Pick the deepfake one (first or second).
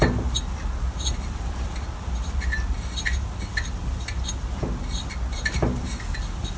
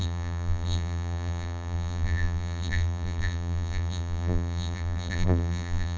second